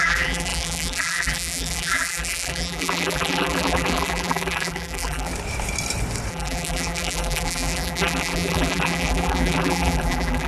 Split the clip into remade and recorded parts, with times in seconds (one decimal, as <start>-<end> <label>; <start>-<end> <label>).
0.0-5.3 remade; 5.3-6.3 recorded; 6.3-10.5 remade